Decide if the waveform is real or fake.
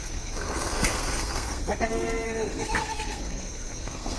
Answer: fake